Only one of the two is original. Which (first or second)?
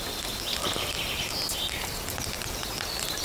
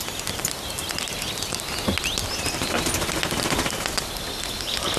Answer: second